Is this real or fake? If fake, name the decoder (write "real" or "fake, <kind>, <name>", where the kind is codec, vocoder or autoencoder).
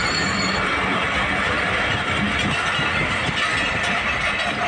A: real